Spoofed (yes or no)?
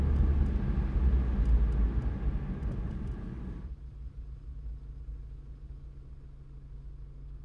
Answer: no